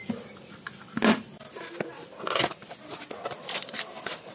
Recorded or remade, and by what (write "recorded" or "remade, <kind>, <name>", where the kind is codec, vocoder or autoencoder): recorded